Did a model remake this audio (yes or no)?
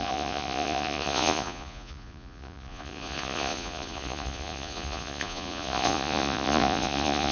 yes